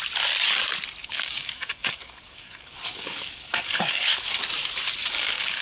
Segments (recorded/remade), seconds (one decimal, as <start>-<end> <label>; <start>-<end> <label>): 0.0-1.0 recorded; 1.0-4.4 remade; 4.4-5.0 recorded; 5.0-5.6 remade